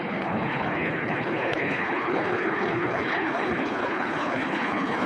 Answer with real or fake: fake